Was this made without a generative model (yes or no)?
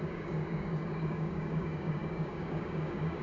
no